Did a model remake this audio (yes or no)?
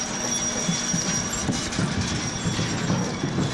no